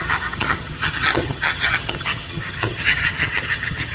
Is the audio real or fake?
fake